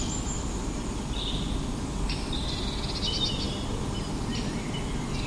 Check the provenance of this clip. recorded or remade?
recorded